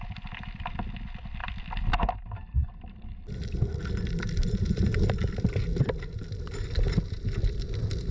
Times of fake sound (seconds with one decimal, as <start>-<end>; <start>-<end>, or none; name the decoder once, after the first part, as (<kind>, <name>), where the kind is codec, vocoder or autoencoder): 1.4-5.8 (vocoder, BigVGAN v2)